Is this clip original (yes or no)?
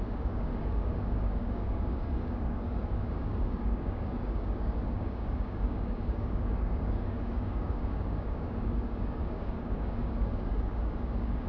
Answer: no